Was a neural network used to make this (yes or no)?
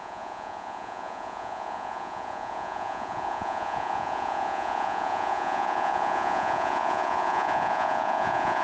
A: yes